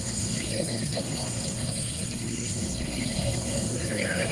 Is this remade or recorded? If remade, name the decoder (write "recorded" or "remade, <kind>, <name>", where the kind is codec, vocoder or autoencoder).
remade, codec, SNAC